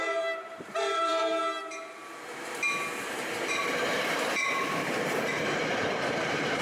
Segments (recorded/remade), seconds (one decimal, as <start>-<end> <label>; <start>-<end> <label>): 0.0-1.1 remade; 1.1-3.1 recorded; 3.1-3.6 remade; 3.6-4.6 recorded; 4.6-6.6 remade